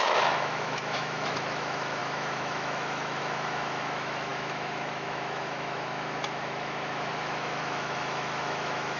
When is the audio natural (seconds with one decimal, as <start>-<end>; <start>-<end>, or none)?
none